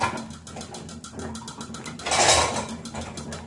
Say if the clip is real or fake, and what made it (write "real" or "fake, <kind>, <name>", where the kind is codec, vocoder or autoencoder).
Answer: real